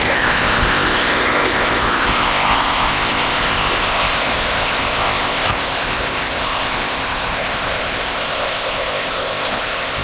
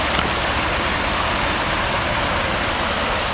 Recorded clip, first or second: second